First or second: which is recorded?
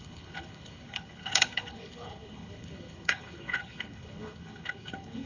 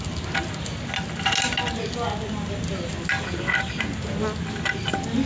second